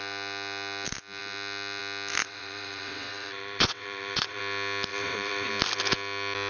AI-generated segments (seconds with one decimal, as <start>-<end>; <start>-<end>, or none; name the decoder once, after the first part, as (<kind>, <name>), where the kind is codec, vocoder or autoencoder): 2.2-4.4 (vocoder, WaveNeXt); 4.9-5.5

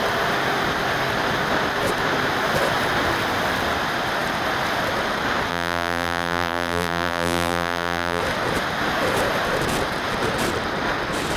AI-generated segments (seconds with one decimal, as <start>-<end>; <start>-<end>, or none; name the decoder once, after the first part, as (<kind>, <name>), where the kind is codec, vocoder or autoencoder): 5.5-8.2 (vocoder, BigVGAN v2)

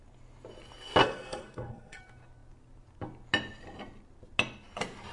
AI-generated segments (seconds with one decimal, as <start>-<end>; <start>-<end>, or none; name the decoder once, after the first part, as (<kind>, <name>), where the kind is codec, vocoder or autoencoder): 1.0-2.0 (codec, SNAC)

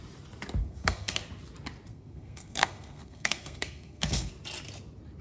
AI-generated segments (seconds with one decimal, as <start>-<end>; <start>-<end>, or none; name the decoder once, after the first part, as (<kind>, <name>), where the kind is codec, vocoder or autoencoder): 0.6-1.2 (codec, SNAC); 1.9-4.3